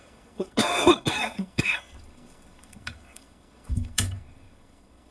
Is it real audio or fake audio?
fake